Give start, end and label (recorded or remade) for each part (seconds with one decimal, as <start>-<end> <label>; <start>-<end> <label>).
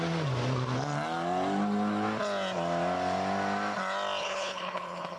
0.0-4.2 recorded; 4.2-5.2 remade